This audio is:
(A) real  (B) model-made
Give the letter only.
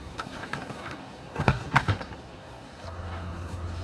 B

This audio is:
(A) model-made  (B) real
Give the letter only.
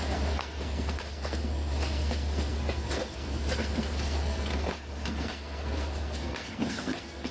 A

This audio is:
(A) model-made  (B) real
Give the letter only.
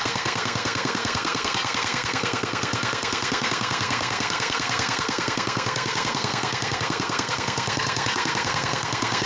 A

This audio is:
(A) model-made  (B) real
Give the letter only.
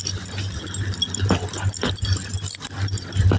B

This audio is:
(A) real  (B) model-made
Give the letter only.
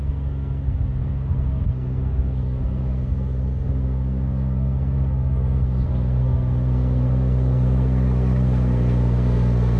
B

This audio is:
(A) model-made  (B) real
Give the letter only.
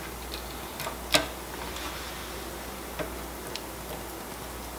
B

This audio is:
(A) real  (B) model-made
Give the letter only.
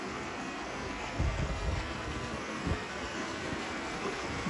B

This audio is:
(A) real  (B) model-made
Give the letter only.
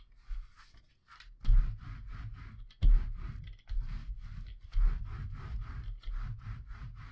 A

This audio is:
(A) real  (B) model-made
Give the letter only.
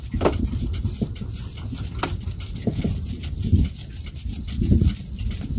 A